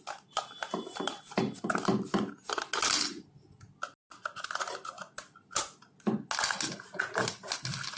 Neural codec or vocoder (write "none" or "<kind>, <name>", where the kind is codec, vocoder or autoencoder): none